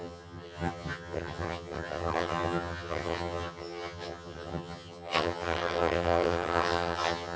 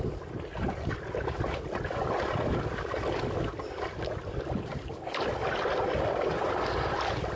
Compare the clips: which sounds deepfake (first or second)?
first